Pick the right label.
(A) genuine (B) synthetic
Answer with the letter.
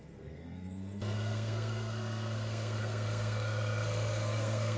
B